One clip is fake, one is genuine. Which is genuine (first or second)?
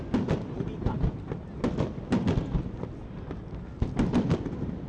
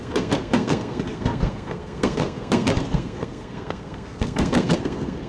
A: first